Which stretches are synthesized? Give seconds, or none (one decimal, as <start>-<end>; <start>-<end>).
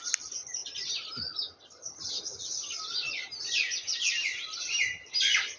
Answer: none